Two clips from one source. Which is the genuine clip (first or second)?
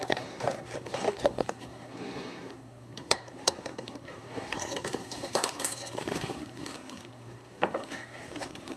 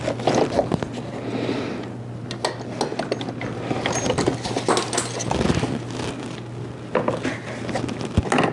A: second